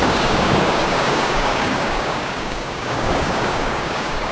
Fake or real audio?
fake